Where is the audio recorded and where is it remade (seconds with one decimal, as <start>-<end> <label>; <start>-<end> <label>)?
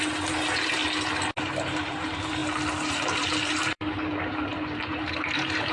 0.0-0.8 remade; 0.8-1.4 recorded; 1.4-2.4 remade; 2.4-2.9 recorded; 2.9-5.7 remade